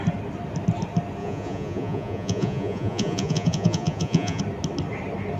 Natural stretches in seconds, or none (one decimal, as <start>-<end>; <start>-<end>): 0.0-1.2; 4.4-5.4